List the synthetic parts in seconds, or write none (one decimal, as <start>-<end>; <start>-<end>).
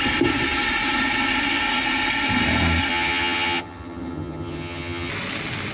2.9-5.1